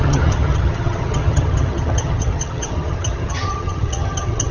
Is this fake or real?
fake